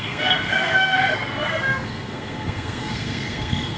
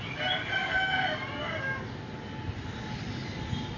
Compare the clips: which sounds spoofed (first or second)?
first